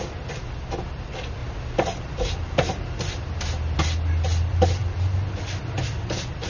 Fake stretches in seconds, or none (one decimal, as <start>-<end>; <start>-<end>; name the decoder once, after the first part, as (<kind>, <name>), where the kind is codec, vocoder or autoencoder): none